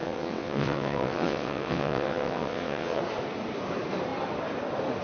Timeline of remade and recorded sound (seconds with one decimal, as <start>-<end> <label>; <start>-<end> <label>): 0.0-3.0 remade; 3.0-5.0 recorded